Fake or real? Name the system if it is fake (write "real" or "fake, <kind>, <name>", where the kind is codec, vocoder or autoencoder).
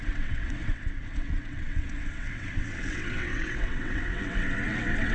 fake, vocoder, WaveNeXt